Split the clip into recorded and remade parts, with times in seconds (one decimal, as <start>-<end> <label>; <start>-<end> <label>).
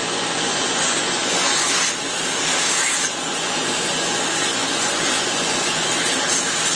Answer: 0.0-1.7 remade; 1.7-3.1 recorded; 3.1-6.0 remade; 6.0-6.8 recorded